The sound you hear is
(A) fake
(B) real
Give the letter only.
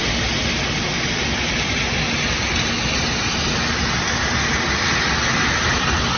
B